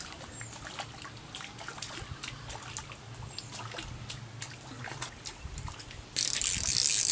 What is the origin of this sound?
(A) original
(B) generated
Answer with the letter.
A